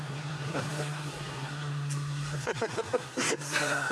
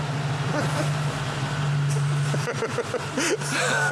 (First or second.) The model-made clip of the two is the first